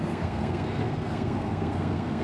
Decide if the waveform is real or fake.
fake